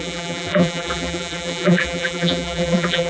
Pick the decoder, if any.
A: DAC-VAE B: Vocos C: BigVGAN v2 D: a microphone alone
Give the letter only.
C